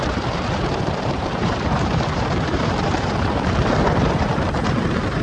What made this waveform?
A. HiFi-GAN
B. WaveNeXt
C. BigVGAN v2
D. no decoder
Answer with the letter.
C